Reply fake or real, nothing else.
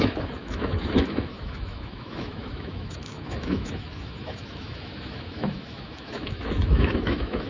fake